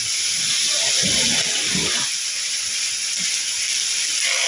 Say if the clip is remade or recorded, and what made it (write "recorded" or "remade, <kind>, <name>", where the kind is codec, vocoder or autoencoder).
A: recorded